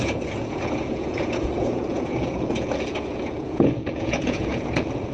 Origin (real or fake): fake